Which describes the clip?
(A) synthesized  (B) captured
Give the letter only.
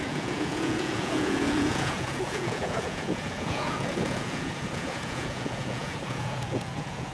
A